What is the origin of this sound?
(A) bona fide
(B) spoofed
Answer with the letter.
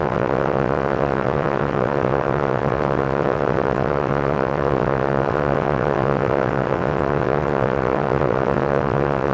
B